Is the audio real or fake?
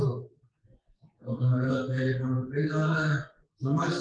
fake